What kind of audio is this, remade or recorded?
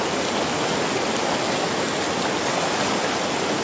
recorded